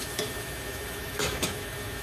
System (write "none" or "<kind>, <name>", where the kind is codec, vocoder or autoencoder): autoencoder, DAC-VAE